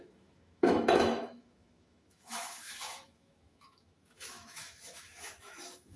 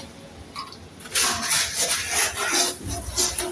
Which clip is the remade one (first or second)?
first